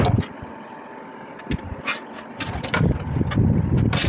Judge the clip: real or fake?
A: real